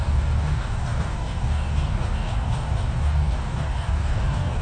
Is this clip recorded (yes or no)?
no